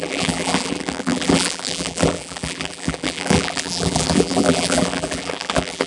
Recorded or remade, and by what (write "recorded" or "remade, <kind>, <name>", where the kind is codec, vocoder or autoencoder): remade, vocoder, BigVGAN v2